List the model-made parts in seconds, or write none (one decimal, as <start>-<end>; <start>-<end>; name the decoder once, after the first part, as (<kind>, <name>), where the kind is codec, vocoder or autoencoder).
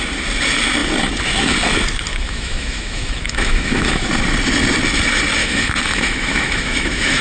2.1-4.1 (autoencoder, DAC-VAE); 5.4-7.2